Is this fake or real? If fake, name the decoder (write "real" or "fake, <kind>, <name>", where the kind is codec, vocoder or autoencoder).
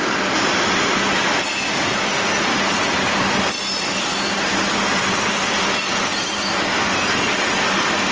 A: real